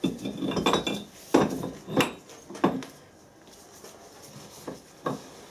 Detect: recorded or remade recorded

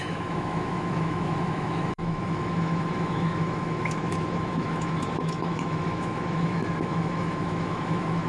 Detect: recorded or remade remade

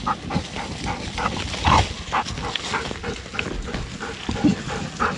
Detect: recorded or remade recorded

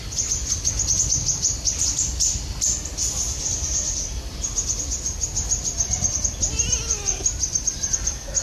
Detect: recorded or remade recorded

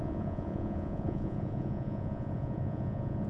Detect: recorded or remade remade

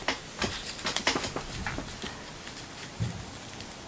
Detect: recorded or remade recorded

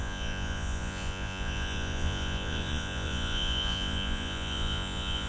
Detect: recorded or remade remade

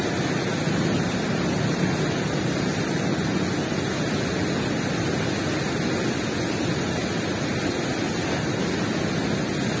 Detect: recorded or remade recorded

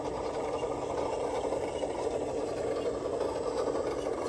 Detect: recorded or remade recorded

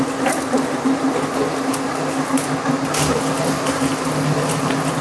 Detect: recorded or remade recorded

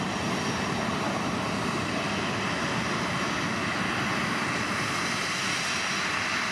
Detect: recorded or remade recorded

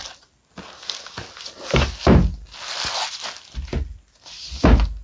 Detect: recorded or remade recorded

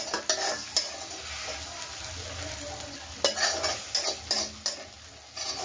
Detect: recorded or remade recorded